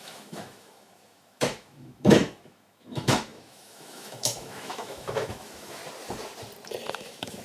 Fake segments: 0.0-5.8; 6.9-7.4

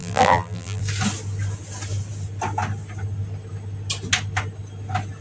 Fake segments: 0.0-0.8